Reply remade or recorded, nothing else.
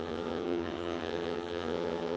remade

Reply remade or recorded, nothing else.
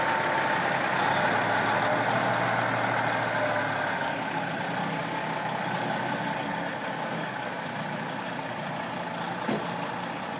recorded